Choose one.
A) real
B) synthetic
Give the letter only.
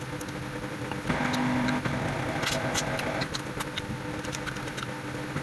A